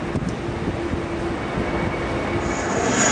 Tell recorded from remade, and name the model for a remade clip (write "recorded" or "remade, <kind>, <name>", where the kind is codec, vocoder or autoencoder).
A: recorded